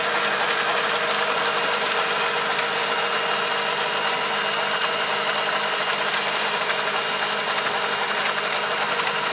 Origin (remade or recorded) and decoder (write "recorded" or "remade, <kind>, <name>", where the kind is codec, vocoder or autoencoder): recorded